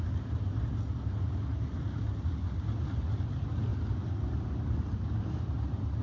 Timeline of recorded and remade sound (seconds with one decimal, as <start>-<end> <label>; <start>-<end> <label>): 0.0-6.0 recorded